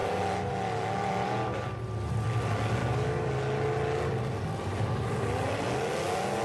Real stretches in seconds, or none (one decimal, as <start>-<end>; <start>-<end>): 0.0-2.8; 3.3-6.4